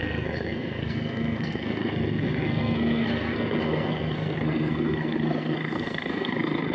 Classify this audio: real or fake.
fake